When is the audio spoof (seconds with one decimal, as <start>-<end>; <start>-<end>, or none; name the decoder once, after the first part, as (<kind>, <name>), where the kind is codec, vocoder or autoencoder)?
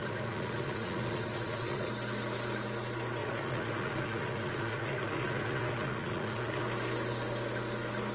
0.0-1.9 (vocoder, Vocos); 3.2-6.6